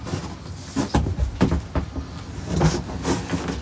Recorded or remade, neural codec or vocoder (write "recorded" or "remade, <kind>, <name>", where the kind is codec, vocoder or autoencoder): recorded